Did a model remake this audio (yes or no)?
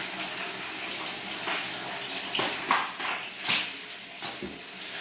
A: no